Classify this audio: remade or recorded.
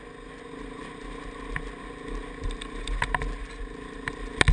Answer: recorded